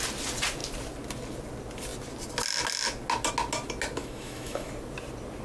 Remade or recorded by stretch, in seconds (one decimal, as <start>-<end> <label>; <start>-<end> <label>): 0.0-4.0 recorded; 4.0-4.7 remade; 4.7-5.4 recorded